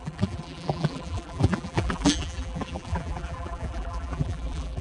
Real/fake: fake